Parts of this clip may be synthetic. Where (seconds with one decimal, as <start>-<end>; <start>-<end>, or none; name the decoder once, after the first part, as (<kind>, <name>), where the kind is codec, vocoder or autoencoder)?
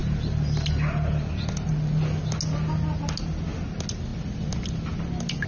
none